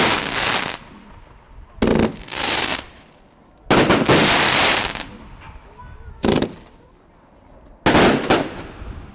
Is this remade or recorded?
recorded